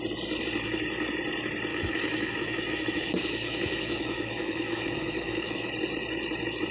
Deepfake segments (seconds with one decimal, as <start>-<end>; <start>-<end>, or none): 1.7-5.7